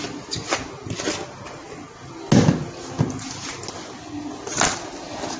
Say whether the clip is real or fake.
real